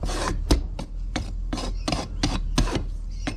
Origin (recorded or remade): recorded